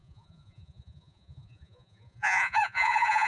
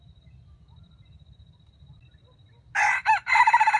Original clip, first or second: second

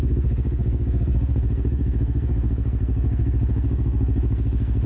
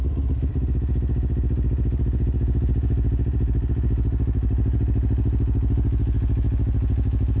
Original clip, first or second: second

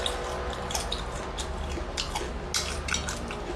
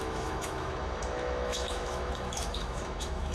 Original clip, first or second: first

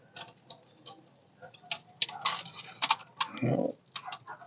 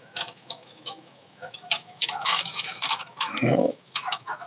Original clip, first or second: first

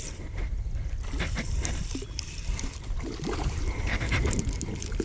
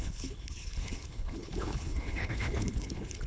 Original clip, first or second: first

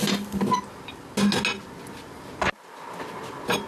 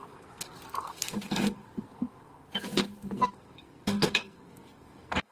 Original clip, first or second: first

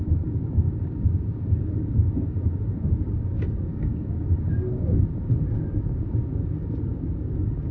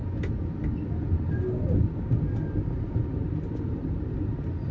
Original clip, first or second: second